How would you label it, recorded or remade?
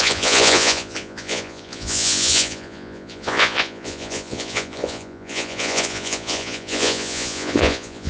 remade